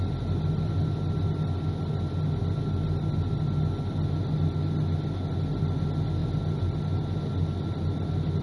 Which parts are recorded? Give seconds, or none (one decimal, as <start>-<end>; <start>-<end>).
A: 0.0-8.4